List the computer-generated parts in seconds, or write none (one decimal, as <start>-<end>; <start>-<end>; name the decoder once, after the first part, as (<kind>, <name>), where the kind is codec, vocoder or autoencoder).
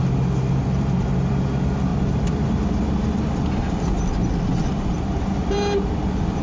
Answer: 1.9-2.7 (vocoder, BigVGAN v2)